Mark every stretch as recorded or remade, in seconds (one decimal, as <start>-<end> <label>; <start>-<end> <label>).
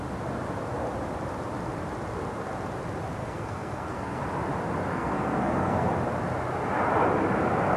0.0-3.2 recorded; 3.2-4.2 remade; 4.2-4.9 recorded; 4.9-5.9 remade; 5.9-7.8 recorded